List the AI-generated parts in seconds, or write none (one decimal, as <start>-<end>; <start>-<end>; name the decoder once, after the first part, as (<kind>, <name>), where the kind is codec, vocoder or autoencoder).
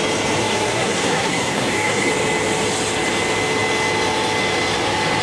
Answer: 0.4-2.1 (codec, SNAC)